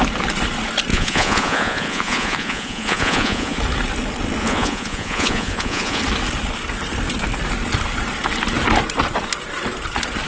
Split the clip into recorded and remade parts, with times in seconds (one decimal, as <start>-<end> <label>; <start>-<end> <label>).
0.0-0.9 recorded; 0.9-3.6 remade; 3.6-4.4 recorded; 4.4-6.0 remade; 6.0-10.3 recorded